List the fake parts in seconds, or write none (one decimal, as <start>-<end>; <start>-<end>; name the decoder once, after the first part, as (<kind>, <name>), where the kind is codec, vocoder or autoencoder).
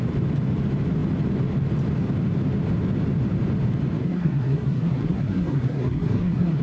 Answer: 4.0-6.6 (codec, SNAC)